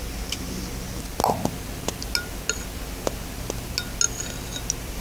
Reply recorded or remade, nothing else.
recorded